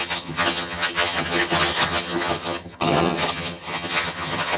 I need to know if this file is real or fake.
fake